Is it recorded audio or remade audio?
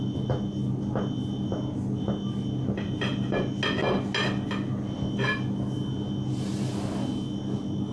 recorded